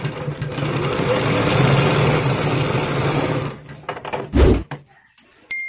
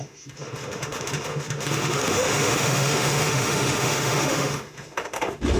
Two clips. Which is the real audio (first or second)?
first